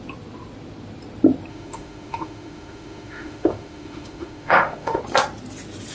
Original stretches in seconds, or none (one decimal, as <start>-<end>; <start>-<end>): 0.0-1.5; 5.0-5.9